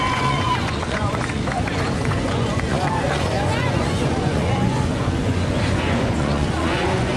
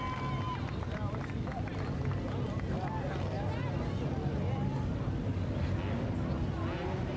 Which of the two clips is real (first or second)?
second